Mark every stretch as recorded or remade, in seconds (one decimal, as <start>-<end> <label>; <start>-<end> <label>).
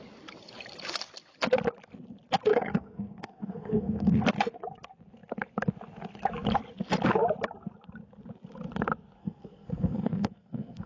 0.0-2.5 recorded; 2.5-4.2 remade; 4.2-9.2 recorded; 9.2-10.9 remade